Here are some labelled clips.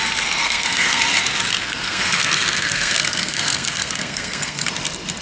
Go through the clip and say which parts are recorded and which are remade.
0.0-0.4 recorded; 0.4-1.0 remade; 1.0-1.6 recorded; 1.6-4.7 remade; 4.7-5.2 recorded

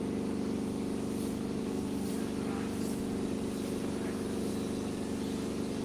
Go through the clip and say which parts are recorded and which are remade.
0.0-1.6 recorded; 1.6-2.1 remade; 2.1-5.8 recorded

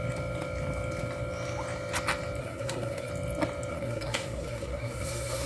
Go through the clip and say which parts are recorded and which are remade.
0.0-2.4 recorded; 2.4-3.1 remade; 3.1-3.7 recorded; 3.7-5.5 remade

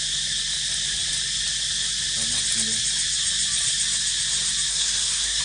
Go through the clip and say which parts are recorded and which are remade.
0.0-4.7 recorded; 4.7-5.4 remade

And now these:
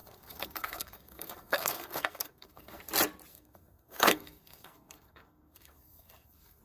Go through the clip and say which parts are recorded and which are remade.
0.0-2.8 remade; 2.8-3.3 recorded; 3.3-6.6 remade